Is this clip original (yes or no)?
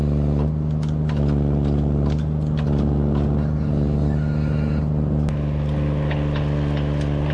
yes